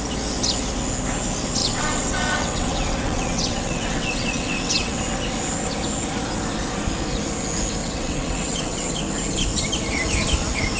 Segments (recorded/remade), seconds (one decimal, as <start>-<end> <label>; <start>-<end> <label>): 0.0-1.6 recorded; 1.6-5.0 remade; 5.0-7.8 recorded; 7.8-8.9 remade; 8.9-10.8 recorded